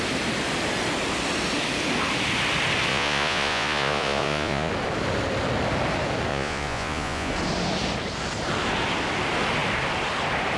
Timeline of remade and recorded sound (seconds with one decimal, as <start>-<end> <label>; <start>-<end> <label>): 0.0-2.9 recorded; 2.9-4.7 remade; 4.7-6.3 recorded; 6.3-7.3 remade; 7.3-10.6 recorded